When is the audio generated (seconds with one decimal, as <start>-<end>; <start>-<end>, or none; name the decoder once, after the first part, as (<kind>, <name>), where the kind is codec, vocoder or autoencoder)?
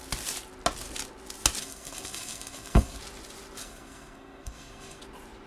1.6-3.0 (codec, SNAC); 3.6-5.0